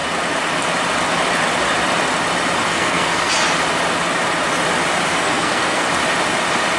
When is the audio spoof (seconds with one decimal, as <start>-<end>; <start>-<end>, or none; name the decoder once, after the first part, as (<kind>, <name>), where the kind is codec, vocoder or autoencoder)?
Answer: 2.7-3.3 (codec, SNAC); 5.2-5.9